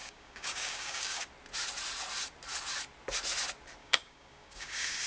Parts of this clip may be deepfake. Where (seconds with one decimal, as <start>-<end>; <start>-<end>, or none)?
0.0-1.2; 3.8-5.1